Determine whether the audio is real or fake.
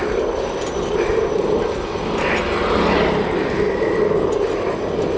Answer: real